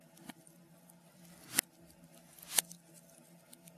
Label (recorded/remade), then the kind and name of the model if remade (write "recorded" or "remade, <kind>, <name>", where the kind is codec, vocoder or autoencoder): recorded